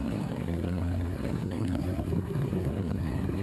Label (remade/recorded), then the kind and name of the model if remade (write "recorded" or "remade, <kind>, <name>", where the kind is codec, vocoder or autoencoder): remade, codec, SNAC